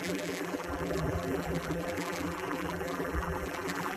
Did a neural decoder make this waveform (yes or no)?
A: yes